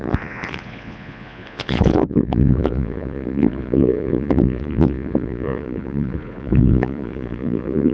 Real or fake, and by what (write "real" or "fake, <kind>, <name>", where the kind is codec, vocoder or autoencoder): fake, vocoder, Vocos